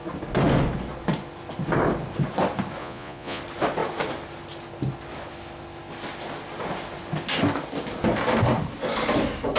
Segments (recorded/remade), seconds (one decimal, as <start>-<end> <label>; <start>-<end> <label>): 0.0-2.8 recorded; 2.8-3.4 remade; 3.4-9.6 recorded